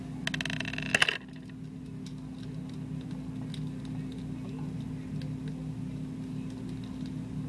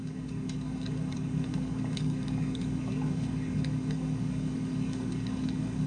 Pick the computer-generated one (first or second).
second